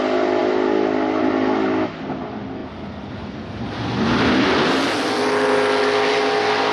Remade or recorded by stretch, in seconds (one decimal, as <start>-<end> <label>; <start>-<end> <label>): 0.0-6.7 recorded